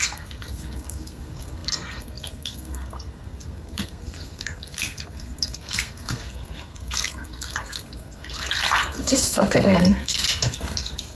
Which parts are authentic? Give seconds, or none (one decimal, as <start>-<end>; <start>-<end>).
none